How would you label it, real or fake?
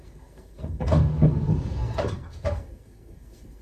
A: fake